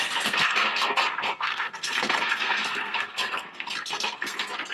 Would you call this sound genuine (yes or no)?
no